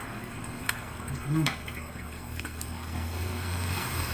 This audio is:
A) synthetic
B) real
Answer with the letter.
A